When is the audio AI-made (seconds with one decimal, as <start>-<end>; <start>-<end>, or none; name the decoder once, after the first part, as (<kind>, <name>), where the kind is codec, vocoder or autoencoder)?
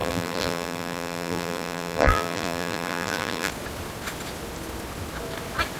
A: 0.0-3.5 (vocoder, BigVGAN v2)